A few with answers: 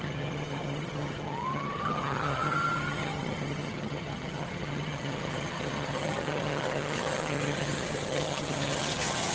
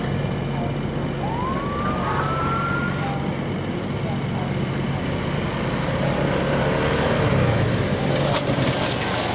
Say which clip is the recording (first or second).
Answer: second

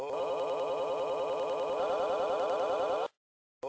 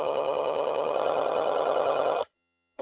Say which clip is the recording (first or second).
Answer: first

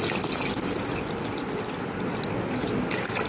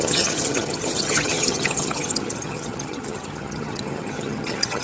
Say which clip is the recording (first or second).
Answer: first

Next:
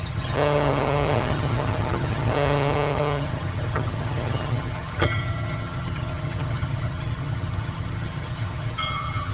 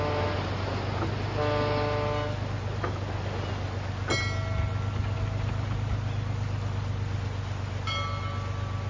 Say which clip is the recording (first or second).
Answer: second